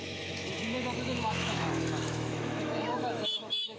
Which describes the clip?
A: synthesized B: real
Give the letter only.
A